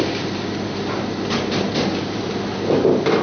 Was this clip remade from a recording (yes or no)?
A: no